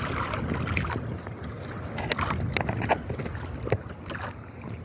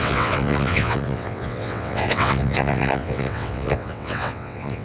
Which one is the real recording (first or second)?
first